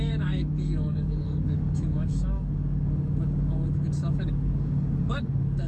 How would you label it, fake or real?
fake